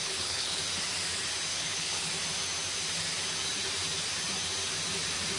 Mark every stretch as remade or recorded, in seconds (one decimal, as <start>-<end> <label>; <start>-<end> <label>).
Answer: 0.0-0.6 remade; 0.6-1.5 recorded; 1.5-2.1 remade; 2.1-5.4 recorded